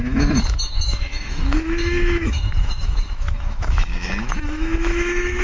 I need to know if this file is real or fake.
fake